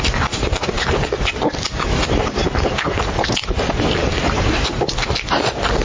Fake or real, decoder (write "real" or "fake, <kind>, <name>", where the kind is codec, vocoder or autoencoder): real